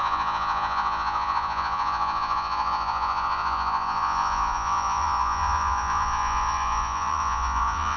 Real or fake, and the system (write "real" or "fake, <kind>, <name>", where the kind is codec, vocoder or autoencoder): fake, vocoder, Vocos